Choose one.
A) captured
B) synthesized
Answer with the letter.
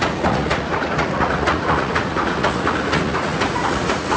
B